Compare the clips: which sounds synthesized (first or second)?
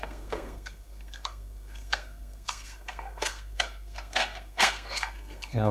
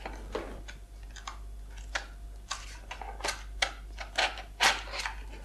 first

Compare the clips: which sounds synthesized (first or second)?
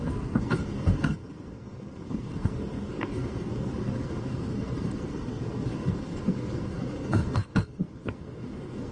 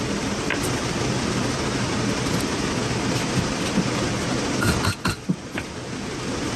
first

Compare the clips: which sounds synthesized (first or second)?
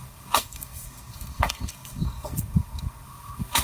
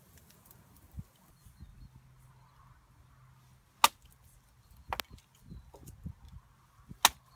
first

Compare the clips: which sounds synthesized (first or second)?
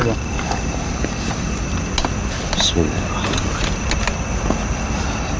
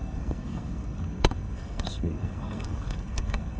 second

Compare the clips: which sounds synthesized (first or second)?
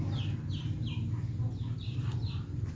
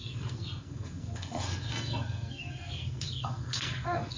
second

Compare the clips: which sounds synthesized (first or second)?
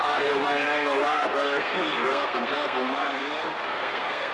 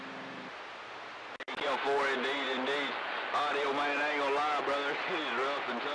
first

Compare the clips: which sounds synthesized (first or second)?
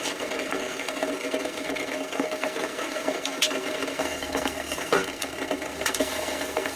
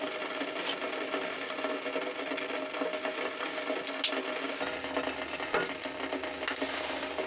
first